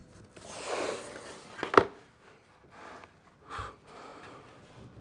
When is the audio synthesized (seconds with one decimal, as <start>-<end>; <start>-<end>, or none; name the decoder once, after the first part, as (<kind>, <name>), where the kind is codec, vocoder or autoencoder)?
none